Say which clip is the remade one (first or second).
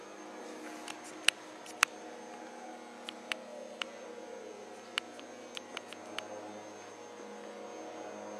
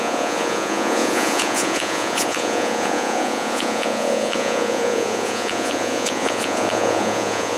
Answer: second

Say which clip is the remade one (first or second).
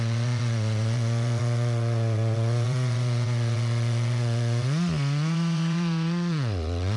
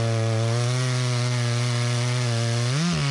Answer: first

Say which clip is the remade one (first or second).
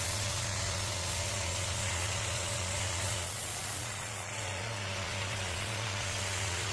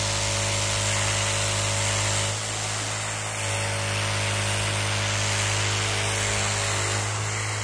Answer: first